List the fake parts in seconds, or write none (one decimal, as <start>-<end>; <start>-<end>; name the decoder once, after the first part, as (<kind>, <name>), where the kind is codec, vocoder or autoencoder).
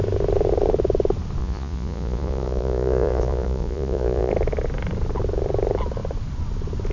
1.4-4.3 (vocoder, Vocos)